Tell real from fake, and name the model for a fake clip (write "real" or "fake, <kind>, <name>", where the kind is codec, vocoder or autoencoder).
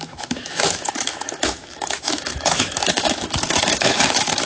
fake, autoencoder, DAC-VAE